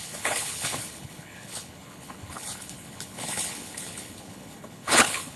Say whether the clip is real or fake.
fake